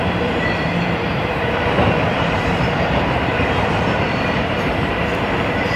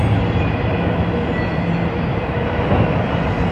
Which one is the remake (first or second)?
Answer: first